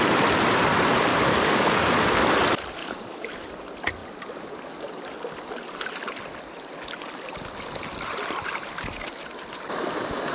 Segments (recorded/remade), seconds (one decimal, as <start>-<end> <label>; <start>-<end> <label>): 0.0-1.1 recorded; 1.1-1.9 remade; 1.9-2.8 recorded; 2.8-3.5 remade; 3.5-10.3 recorded